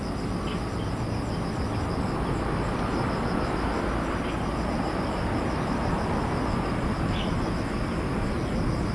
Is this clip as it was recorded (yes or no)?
yes